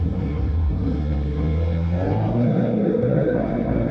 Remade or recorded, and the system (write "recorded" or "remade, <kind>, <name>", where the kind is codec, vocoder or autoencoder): remade, codec, SNAC